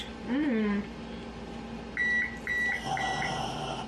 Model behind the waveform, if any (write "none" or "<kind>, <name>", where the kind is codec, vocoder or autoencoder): none